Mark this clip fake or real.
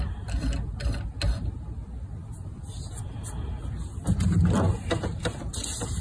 real